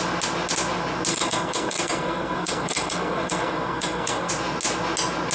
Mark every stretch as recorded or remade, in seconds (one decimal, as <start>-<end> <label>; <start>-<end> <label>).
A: 0.0-1.1 recorded; 1.1-4.3 remade; 4.3-5.3 recorded